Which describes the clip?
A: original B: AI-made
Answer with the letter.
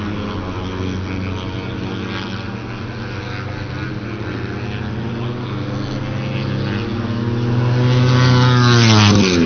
A